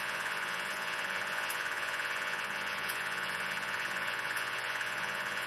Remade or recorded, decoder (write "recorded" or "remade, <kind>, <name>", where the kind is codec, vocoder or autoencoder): remade, vocoder, Vocos